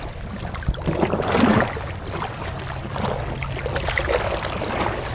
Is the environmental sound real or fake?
real